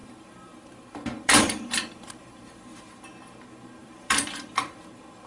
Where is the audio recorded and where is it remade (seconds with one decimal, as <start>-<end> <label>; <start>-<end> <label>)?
0.0-3.0 remade; 3.0-3.8 recorded; 3.8-4.8 remade; 4.8-5.3 recorded